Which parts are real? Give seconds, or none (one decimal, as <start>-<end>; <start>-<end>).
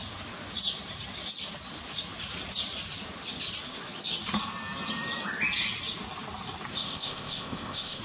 0.0-6.7